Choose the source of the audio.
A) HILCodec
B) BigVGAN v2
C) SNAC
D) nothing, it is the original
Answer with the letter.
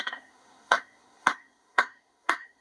C